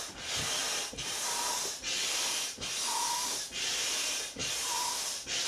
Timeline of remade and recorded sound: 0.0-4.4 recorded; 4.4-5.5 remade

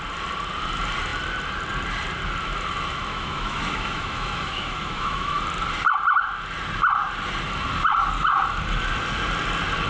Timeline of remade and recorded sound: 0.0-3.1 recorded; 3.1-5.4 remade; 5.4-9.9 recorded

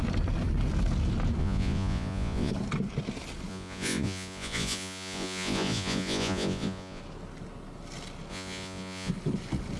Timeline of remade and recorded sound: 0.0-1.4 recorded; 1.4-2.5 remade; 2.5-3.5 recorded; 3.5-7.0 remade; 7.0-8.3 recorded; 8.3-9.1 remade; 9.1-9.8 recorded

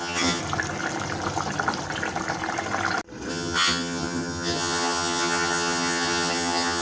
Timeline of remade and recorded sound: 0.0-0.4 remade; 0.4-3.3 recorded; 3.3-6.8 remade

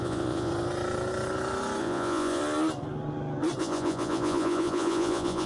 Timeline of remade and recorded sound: 0.0-0.5 remade; 0.5-1.8 recorded; 1.8-2.4 remade; 2.4-3.6 recorded; 3.6-5.5 remade

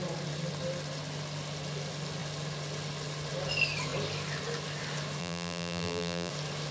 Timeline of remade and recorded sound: 0.0-5.2 recorded; 5.2-6.3 remade; 6.3-6.7 recorded

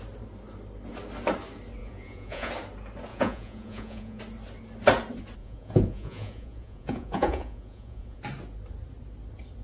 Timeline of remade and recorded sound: 0.0-1.8 recorded; 1.8-2.5 remade; 2.5-3.1 recorded; 3.1-4.2 remade; 4.2-5.4 recorded; 5.4-8.2 remade; 8.2-9.6 recorded